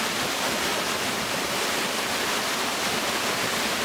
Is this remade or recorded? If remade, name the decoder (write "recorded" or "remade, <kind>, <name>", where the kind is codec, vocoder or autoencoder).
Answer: recorded